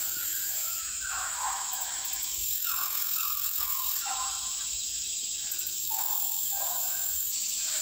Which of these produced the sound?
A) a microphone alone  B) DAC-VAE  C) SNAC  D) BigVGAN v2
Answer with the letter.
B